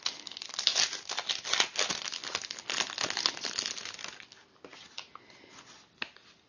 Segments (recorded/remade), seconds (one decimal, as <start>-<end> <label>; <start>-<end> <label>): 0.0-6.5 recorded